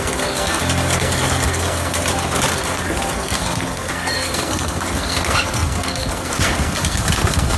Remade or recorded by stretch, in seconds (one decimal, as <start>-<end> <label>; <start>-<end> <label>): 0.0-2.0 remade; 2.0-2.5 recorded; 2.5-7.6 remade